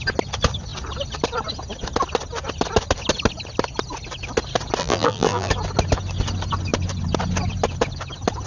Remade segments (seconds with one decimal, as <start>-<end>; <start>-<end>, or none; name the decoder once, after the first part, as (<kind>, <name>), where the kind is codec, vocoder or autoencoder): 4.8-5.5 (vocoder, BigVGAN v2)